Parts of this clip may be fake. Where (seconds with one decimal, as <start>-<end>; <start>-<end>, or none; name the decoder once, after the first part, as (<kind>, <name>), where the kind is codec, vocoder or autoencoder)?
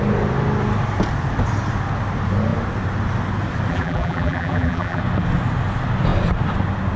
3.7-5.0 (vocoder, BigVGAN v2)